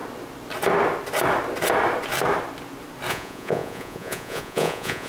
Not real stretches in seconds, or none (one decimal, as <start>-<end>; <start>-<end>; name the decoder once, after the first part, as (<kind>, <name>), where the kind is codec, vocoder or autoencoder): 3.1-5.1 (vocoder, Vocos)